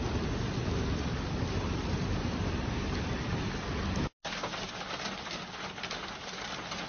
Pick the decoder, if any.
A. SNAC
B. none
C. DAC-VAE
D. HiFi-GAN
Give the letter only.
B